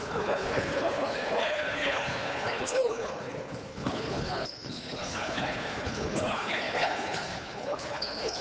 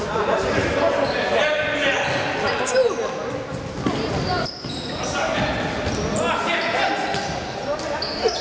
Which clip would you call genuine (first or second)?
second